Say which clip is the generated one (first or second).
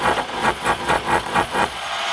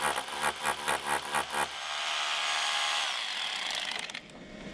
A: first